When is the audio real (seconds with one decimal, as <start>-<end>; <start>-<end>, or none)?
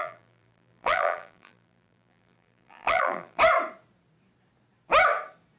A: 3.4-5.6